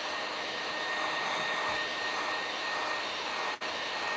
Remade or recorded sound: remade